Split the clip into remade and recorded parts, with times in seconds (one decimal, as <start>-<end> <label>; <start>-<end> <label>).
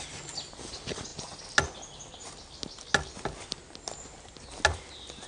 0.0-5.3 recorded